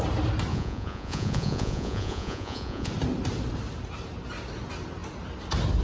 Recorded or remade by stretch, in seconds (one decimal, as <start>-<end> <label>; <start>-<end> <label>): 0.0-0.5 recorded; 0.5-2.9 remade; 2.9-5.8 recorded